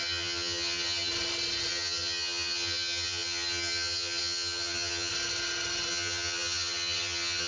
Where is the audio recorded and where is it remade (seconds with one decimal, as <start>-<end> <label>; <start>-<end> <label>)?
0.0-1.1 remade; 1.1-1.7 recorded; 1.7-5.1 remade; 5.1-5.9 recorded; 5.9-7.5 remade